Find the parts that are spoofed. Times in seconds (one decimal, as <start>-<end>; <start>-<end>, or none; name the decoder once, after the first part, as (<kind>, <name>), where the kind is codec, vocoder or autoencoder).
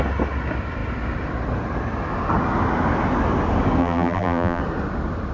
3.8-4.6 (vocoder, BigVGAN v2)